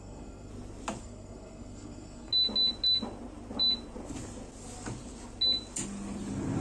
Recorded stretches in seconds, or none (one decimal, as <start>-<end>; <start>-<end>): 0.5-1.0; 2.3-6.6